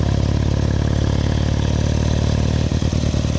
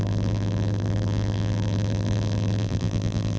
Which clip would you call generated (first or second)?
second